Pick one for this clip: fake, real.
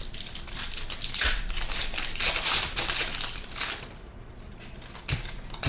real